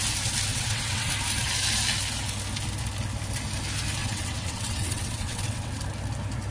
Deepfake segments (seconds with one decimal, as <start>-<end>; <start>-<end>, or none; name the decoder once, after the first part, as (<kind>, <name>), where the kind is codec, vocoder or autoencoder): 0.5-1.1 (vocoder, WaveNeXt); 4.0-5.8